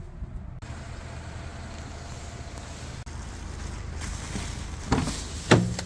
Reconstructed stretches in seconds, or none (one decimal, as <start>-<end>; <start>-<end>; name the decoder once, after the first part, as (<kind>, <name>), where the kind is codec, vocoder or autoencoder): none